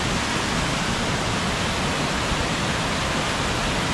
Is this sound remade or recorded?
recorded